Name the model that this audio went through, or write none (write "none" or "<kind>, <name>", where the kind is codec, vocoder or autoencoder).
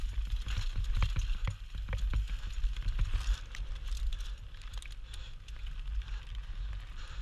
none